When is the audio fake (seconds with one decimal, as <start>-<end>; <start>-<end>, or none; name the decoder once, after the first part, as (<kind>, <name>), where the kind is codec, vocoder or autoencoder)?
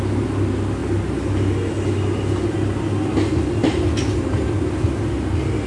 none